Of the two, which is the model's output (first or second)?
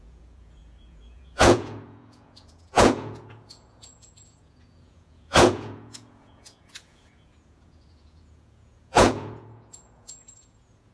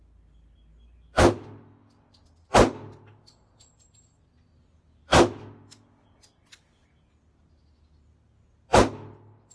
first